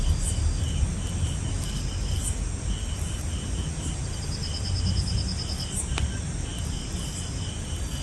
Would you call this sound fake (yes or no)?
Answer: no